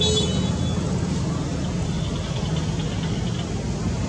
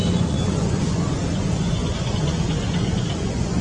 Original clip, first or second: first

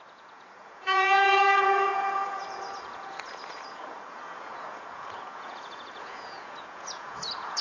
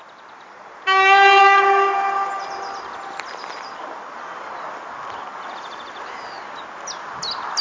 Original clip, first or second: second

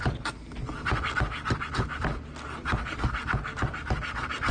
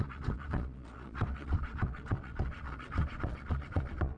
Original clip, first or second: first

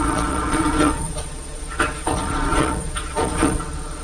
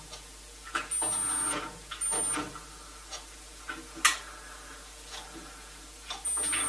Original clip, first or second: second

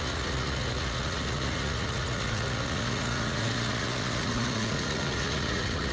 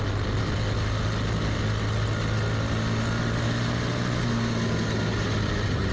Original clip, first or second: second